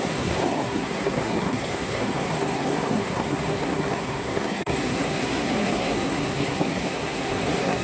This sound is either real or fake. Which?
fake